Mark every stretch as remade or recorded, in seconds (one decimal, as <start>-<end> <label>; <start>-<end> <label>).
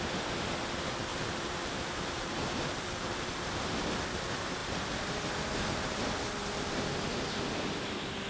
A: 0.0-1.1 recorded; 1.1-3.9 remade; 3.9-8.3 recorded